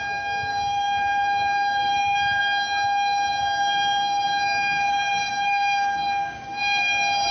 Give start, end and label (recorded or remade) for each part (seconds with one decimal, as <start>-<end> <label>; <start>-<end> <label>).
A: 0.0-0.5 recorded; 0.5-2.4 remade; 2.4-3.4 recorded; 3.4-6.8 remade; 6.8-7.3 recorded